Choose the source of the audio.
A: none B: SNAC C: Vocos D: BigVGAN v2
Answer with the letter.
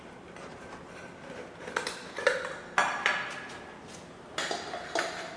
A